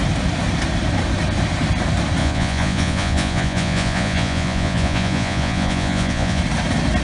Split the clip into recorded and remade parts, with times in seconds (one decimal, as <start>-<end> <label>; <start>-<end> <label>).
0.0-2.2 recorded; 2.2-6.4 remade; 6.4-7.0 recorded